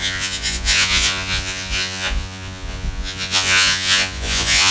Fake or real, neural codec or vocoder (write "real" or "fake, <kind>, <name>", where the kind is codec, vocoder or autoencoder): fake, vocoder, Vocos